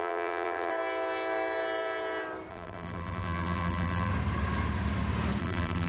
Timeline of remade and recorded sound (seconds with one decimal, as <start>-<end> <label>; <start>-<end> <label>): 0.0-0.7 remade; 0.7-2.5 recorded; 2.5-4.1 remade; 4.1-5.4 recorded; 5.4-5.9 remade